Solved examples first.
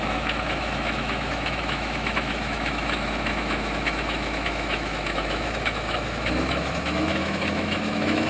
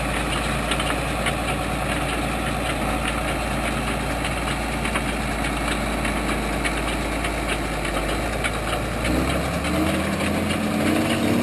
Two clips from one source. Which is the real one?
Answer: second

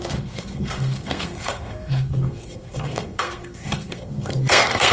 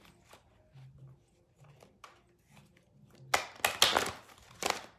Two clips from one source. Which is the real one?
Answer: second